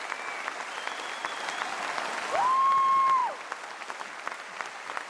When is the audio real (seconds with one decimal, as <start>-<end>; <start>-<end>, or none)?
0.0-5.1